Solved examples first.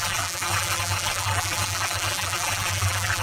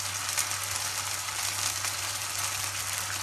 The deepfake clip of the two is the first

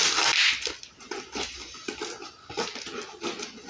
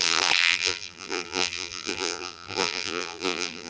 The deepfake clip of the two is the second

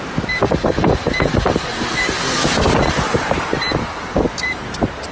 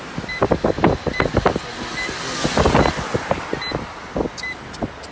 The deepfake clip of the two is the first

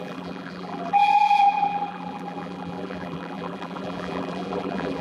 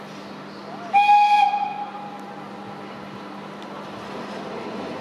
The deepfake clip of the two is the first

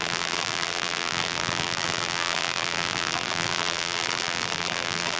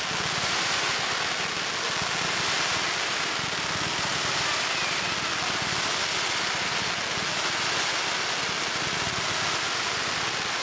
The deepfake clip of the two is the first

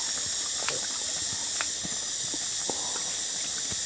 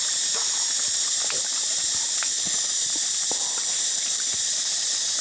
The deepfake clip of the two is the second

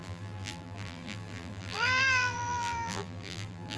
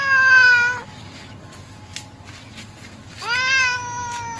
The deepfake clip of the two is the first